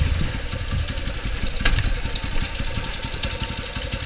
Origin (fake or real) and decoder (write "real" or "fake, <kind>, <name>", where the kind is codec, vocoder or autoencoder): real